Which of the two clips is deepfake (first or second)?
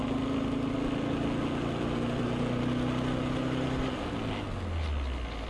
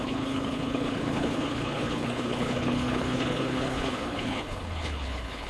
second